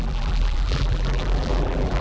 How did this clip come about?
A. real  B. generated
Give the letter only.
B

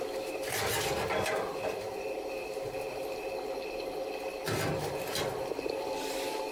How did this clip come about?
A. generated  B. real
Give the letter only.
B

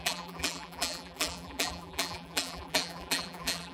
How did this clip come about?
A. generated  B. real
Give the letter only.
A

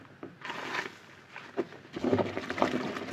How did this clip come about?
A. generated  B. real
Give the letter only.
B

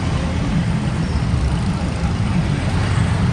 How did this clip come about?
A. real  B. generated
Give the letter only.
A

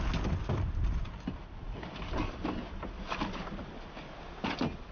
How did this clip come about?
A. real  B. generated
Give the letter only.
A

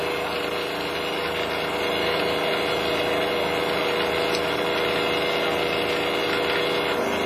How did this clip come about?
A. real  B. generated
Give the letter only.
A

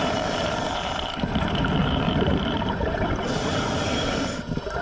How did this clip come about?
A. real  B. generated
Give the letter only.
B